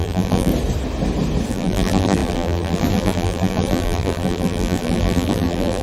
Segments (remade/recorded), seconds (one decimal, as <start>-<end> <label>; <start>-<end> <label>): 0.0-0.5 remade; 0.5-1.5 recorded; 1.5-5.8 remade